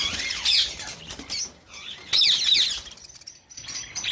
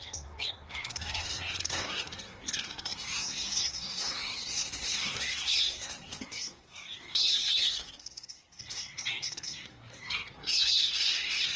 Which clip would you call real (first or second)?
first